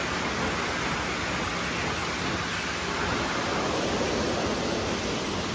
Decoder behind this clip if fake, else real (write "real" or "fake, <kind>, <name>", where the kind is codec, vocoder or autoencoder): real